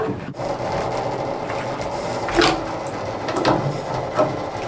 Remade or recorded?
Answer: recorded